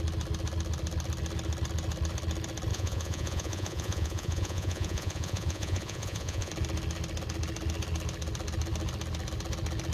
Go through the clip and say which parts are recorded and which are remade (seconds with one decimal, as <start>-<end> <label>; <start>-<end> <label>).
0.0-2.7 recorded; 2.7-6.5 remade; 6.5-9.9 recorded